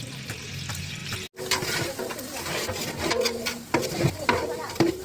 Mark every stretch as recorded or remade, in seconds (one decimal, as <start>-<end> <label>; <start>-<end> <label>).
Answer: 0.0-3.8 recorded; 3.8-5.0 remade